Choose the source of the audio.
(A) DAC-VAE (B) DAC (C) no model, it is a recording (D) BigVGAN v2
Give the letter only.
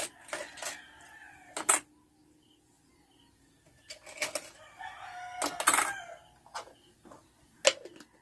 C